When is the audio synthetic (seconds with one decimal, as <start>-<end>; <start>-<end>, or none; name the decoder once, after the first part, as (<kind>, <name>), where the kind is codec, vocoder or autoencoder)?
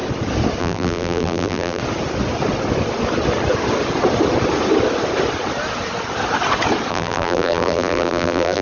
0.6-1.8 (vocoder, BigVGAN v2); 6.9-8.6